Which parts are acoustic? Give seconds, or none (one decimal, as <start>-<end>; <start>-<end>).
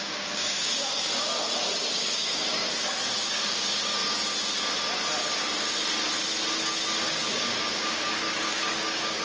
1.1-1.9; 2.6-3.3; 4.0-7.0